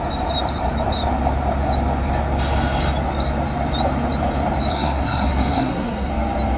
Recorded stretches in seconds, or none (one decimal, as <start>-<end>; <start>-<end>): 0.0-4.7; 6.1-6.6